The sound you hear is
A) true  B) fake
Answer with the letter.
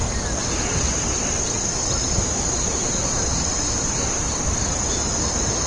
A